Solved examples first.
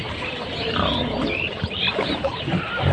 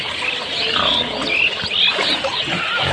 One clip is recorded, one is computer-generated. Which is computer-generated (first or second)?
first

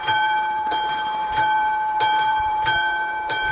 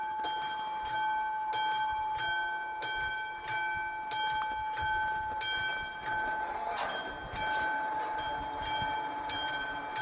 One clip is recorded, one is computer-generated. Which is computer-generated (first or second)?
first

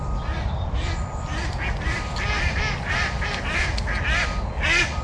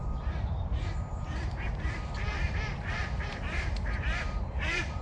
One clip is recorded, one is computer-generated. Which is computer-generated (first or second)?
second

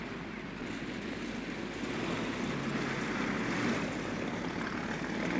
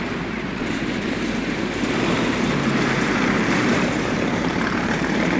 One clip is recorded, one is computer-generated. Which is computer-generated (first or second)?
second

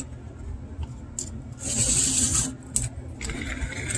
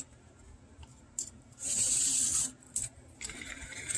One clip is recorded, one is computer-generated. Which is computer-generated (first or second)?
second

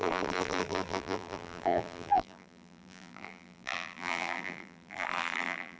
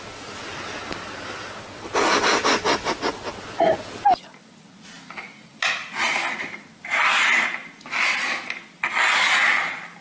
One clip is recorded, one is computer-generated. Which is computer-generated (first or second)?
first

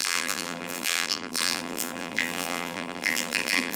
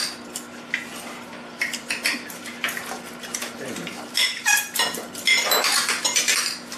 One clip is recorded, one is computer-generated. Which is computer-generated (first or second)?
first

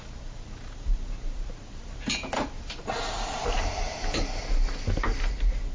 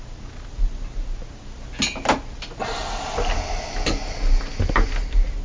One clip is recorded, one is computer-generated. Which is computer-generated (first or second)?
first